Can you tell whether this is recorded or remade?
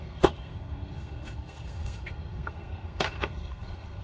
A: remade